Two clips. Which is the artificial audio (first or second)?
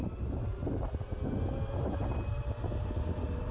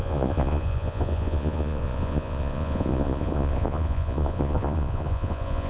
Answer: second